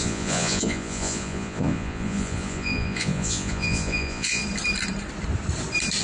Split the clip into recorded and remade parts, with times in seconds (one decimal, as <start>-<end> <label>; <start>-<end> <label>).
0.0-4.4 remade; 4.4-6.0 recorded